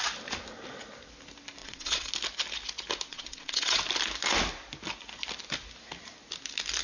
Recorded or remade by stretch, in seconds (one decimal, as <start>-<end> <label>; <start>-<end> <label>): 0.0-1.6 recorded; 1.6-2.1 remade; 2.1-3.1 recorded; 3.1-3.8 remade; 3.8-6.8 recorded